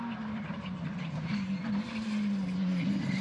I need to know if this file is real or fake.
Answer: real